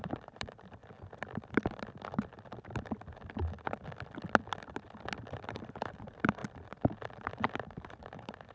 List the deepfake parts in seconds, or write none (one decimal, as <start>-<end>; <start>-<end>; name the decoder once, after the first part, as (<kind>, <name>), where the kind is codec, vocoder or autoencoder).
0.0-0.8 (vocoder, BigVGAN v2); 5.3-6.4; 7.3-8.5